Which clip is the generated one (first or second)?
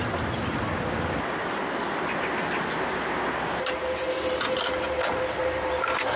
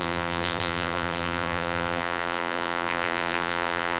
second